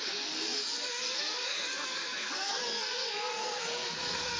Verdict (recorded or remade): remade